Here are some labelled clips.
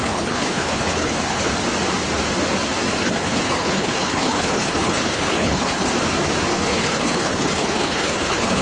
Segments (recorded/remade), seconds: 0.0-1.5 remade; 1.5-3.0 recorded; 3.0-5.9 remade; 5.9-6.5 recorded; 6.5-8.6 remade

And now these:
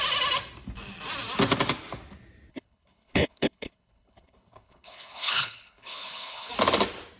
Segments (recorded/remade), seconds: 0.0-2.5 recorded; 2.5-6.5 remade; 6.5-7.2 recorded